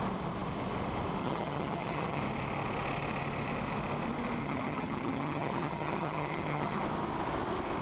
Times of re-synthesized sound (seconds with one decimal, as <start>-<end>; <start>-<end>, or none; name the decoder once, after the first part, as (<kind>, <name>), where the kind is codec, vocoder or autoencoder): 1.2-2.2 (vocoder, HiFi-GAN); 4.4-6.8

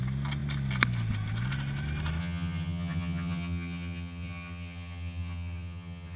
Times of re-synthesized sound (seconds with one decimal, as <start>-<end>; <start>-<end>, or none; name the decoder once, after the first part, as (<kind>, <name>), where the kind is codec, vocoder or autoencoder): 2.2-6.2 (vocoder, HiFi-GAN)

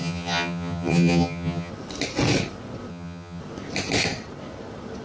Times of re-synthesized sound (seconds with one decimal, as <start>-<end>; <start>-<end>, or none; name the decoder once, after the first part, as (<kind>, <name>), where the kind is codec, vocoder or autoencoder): 0.0-1.7 (vocoder, HiFi-GAN); 2.9-3.4

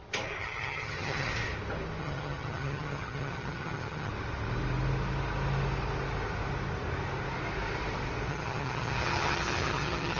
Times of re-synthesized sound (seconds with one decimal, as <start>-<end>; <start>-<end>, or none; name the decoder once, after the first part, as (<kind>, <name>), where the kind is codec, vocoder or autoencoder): 0.4-1.3 (vocoder, HiFi-GAN); 2.0-4.1; 8.3-10.2

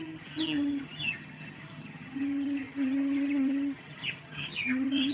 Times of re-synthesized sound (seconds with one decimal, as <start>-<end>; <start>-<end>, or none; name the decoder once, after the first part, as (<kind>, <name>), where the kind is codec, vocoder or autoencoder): 0.0-5.1 (vocoder, HiFi-GAN)

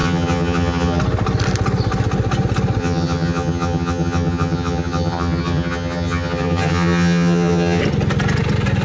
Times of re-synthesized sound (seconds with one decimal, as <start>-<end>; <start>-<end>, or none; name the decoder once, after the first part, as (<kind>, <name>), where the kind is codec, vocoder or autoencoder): 0.0-1.0 (vocoder, HiFi-GAN); 2.8-7.8